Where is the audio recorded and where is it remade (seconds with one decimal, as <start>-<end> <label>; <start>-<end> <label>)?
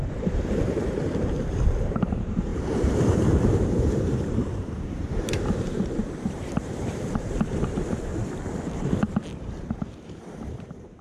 0.0-8.1 remade; 8.1-9.5 recorded; 9.5-11.0 remade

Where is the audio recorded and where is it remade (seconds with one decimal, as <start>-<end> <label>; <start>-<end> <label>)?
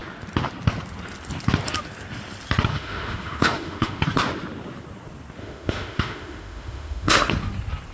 0.0-2.7 recorded; 2.7-4.0 remade; 4.0-5.4 recorded; 5.4-7.3 remade; 7.3-7.9 recorded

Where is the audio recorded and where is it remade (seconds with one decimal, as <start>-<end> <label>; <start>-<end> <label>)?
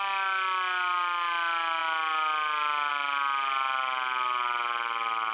0.0-5.3 recorded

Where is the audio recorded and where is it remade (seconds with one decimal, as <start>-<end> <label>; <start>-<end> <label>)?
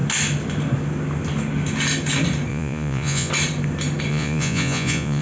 0.0-2.5 recorded; 2.5-3.3 remade; 3.3-4.1 recorded; 4.1-5.2 remade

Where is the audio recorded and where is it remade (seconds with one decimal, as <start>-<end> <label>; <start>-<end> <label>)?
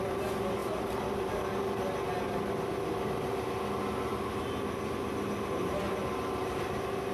0.0-0.6 recorded; 0.6-1.3 remade; 1.3-7.1 recorded